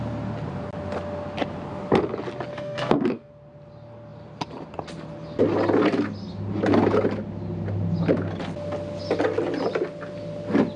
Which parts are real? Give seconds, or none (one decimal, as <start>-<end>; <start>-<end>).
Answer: 0.0-2.5; 3.3-10.8